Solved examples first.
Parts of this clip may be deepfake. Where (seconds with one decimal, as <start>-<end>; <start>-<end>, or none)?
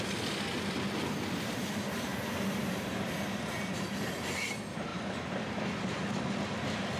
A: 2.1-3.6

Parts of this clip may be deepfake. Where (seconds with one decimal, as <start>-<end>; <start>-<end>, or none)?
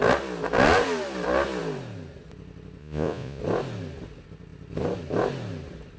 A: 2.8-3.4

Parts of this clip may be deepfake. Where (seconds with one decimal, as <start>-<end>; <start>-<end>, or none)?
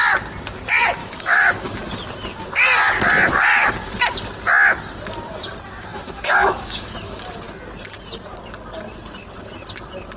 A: 1.0-1.7; 5.9-7.3